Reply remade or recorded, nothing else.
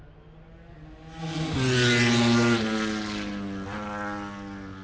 recorded